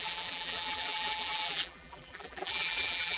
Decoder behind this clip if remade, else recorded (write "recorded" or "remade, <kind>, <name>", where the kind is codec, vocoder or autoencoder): remade, vocoder, BigVGAN v2